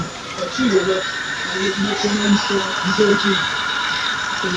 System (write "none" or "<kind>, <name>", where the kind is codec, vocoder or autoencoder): vocoder, BigVGAN v2